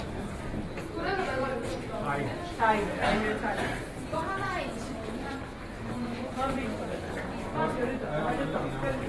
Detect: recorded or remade recorded